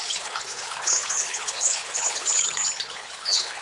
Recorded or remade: remade